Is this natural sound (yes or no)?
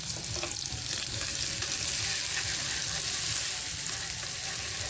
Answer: yes